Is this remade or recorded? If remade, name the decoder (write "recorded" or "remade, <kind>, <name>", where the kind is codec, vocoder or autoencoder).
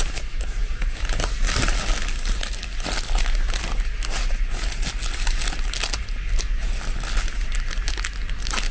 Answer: recorded